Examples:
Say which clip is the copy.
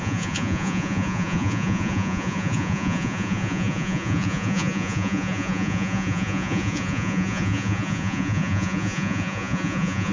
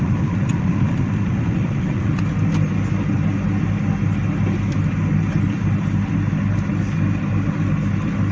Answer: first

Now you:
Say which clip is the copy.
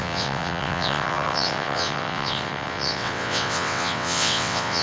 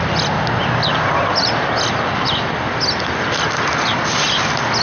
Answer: first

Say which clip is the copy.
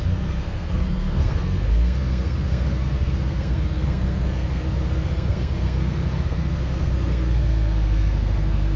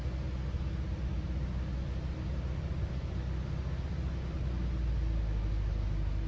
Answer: first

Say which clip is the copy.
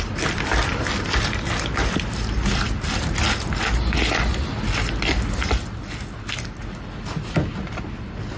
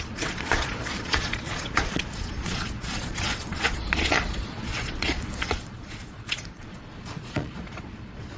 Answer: second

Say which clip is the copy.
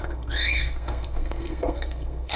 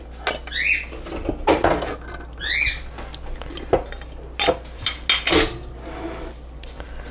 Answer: first